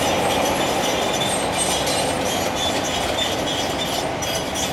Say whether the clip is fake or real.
real